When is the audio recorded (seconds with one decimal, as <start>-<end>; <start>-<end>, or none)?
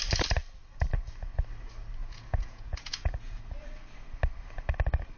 0.0-2.0; 3.4-5.2